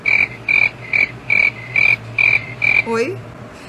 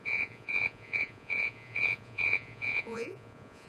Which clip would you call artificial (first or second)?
second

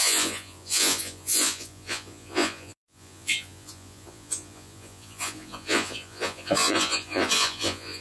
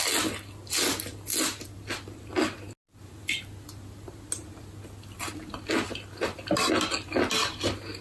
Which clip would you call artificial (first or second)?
first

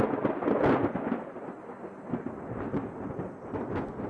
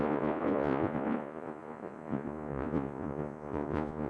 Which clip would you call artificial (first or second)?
second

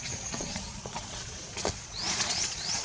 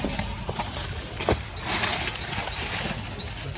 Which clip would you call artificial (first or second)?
first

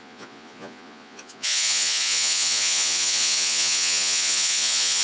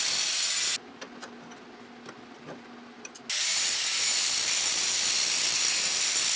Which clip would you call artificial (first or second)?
first